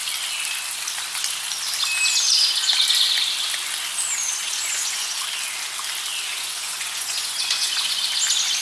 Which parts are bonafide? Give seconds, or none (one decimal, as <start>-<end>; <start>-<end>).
0.0-4.2; 5.2-6.3; 8.0-8.6